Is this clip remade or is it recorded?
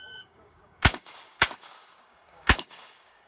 remade